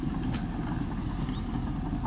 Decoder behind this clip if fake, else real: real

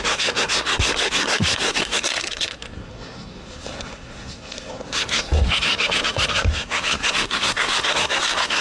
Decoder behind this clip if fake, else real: fake, codec, SNAC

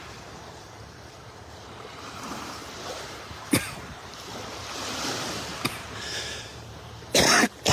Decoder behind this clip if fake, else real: fake, vocoder, BigVGAN v2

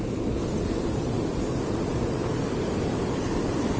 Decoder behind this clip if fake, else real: real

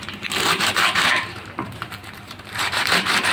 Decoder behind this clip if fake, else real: fake, vocoder, BigVGAN v2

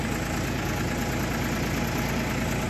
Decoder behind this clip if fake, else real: real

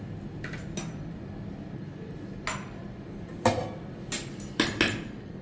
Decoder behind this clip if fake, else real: real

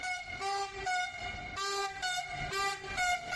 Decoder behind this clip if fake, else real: real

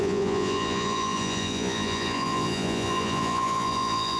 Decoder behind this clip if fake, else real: fake, vocoder, Vocos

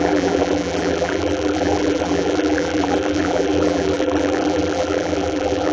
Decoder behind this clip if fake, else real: fake, vocoder, BigVGAN v2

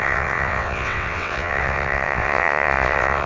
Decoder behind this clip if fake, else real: fake, vocoder, WaveNeXt